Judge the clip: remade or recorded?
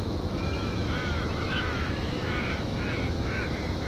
remade